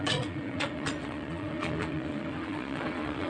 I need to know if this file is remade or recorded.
remade